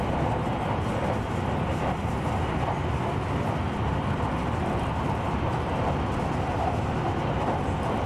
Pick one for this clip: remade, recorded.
recorded